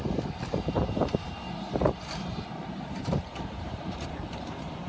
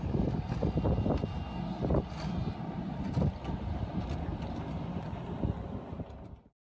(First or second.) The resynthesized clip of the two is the first